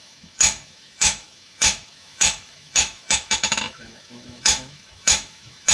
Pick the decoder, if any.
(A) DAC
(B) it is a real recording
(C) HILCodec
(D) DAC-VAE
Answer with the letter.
D